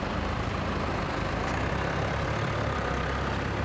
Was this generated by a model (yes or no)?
yes